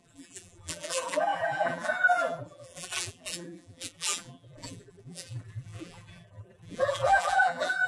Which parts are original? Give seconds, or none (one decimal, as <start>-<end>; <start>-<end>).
none